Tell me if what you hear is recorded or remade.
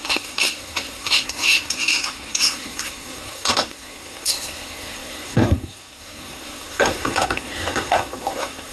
remade